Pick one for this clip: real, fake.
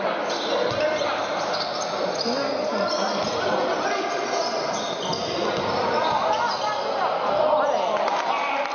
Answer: real